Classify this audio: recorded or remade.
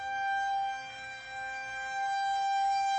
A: remade